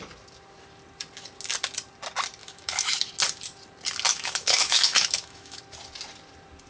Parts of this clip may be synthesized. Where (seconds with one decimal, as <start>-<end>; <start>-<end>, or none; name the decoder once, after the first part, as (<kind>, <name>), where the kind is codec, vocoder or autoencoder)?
2.4-3.0 (autoencoder, DAC-VAE); 4.1-5.6